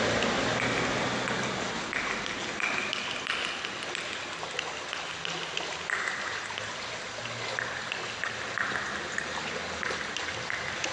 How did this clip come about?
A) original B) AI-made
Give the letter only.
A